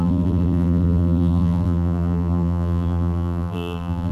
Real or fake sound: fake